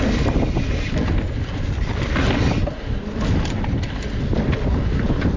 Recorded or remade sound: recorded